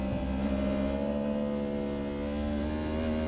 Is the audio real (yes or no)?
yes